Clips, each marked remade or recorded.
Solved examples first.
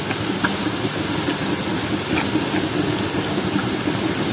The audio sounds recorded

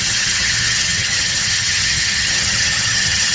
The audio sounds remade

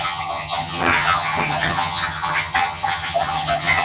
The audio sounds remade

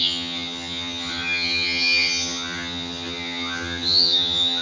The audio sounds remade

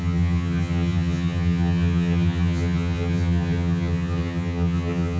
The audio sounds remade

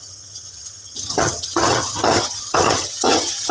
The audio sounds remade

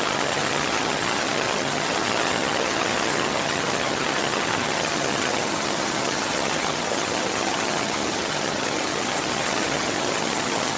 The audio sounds remade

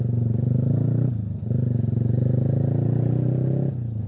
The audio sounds recorded